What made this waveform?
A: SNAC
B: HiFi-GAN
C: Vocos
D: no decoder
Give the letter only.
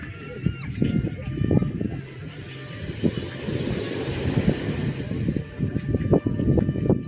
D